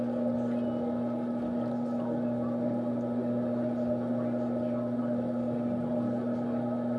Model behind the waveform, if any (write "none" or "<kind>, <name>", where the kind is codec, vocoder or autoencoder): none